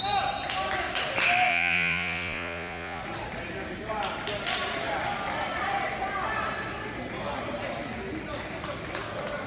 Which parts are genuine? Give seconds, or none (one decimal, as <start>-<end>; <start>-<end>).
0.0-1.5; 3.0-9.5